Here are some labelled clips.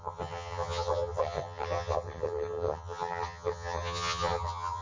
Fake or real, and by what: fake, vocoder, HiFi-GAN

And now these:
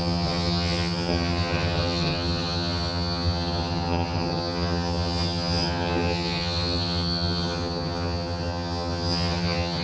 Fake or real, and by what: fake, vocoder, HiFi-GAN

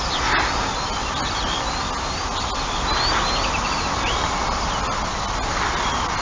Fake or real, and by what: real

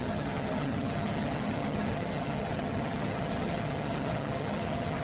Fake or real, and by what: fake, vocoder, HiFi-GAN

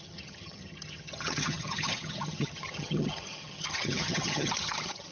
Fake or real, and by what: fake, vocoder, HiFi-GAN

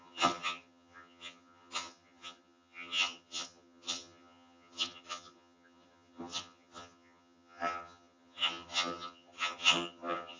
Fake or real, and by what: fake, vocoder, HiFi-GAN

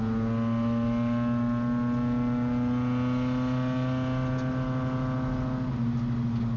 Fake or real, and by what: real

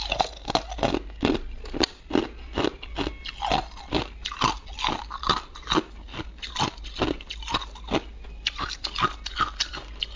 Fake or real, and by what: real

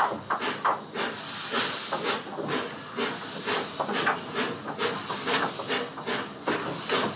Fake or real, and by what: real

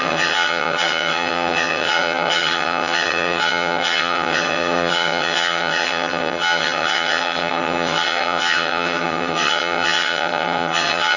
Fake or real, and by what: fake, vocoder, HiFi-GAN